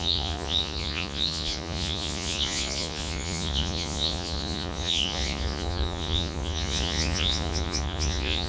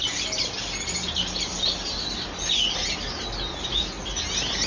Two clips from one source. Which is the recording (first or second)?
second